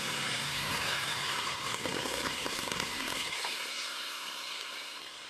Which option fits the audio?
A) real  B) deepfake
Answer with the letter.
B